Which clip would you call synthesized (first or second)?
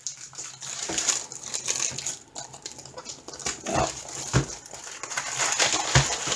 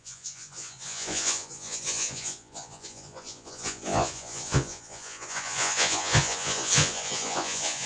second